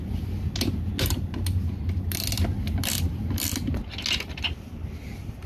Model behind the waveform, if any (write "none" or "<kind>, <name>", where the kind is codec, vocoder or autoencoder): none